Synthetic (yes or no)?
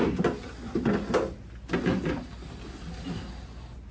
no